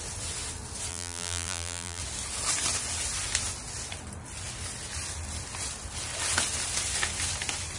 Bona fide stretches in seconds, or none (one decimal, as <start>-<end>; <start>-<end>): 0.0-0.9; 2.0-7.8